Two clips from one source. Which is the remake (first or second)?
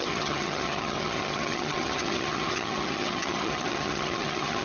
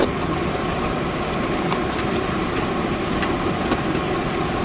first